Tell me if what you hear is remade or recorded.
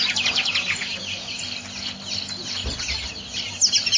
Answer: recorded